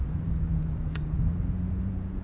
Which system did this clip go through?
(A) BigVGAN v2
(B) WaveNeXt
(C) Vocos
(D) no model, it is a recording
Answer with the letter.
C